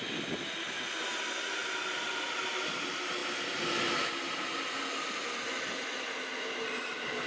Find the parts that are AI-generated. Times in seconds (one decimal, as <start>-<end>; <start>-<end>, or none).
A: none